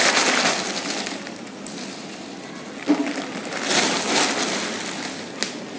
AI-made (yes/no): no